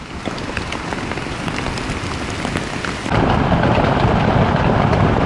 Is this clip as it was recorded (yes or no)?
yes